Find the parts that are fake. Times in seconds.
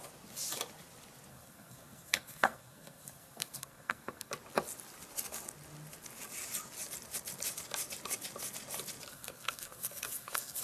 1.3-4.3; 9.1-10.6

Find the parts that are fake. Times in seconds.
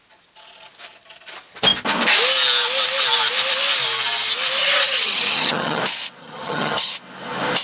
4.6-5.8; 6.2-6.9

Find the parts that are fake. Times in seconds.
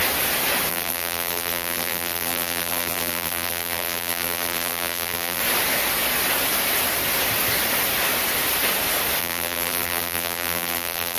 0.7-5.4; 9.2-11.2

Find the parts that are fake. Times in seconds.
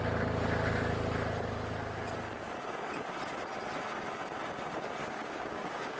5.0-6.0